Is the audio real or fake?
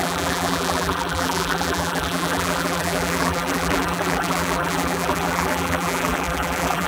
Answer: fake